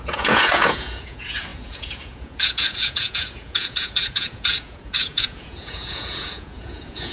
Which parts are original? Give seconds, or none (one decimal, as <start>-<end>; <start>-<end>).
none